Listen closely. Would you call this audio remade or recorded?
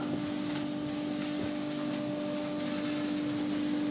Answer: recorded